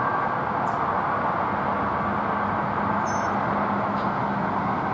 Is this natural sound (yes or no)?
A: yes